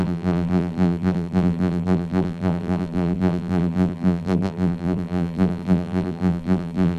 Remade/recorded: remade